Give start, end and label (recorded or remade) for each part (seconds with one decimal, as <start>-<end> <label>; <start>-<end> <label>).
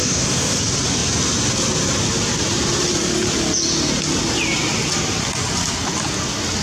0.0-0.6 remade; 0.6-6.6 recorded